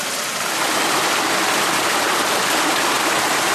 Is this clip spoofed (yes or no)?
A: no